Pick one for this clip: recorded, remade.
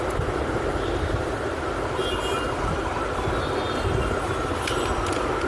recorded